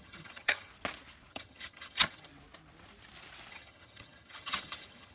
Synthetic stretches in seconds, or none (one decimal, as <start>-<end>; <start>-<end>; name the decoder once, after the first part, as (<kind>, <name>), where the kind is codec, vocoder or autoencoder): 0.0-0.7 (vocoder, HiFi-GAN); 1.3-2.3; 3.5-5.1